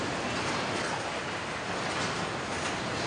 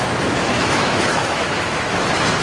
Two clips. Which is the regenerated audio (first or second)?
second